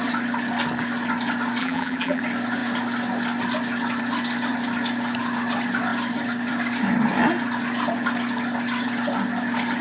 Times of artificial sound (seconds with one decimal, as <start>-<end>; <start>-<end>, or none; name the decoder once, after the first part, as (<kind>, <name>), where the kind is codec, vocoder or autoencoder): 1.6-2.2 (vocoder, BigVGAN v2)